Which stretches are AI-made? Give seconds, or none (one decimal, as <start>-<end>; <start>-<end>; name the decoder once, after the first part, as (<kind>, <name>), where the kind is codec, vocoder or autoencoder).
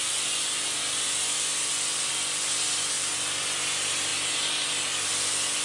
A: none